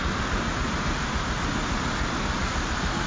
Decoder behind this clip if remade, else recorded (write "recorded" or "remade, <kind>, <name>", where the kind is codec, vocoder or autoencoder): recorded